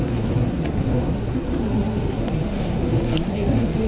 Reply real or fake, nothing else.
fake